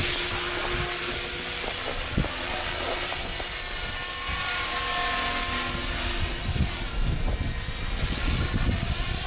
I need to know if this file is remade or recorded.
recorded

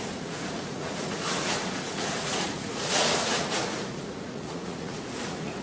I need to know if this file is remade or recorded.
remade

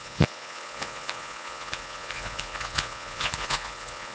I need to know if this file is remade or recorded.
remade